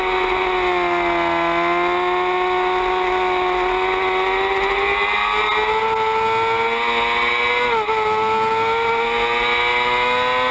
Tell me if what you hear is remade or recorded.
recorded